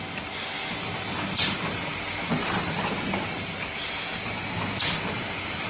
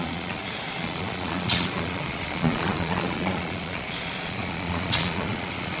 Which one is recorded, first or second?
first